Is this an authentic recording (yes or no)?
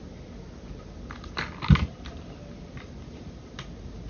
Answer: yes